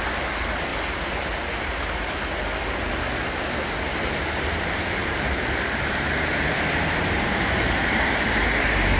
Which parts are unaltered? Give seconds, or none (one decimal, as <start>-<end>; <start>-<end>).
0.0-3.9